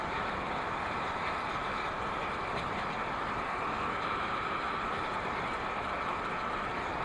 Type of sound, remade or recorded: remade